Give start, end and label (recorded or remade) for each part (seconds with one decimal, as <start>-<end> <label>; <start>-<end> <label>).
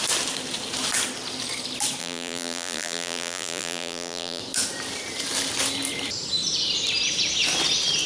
0.0-2.0 recorded; 2.0-4.4 remade; 4.4-8.1 recorded